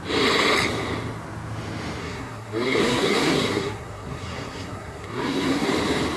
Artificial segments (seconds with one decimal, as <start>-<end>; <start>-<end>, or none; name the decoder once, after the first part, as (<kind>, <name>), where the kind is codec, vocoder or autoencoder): 2.0-5.7 (codec, SNAC)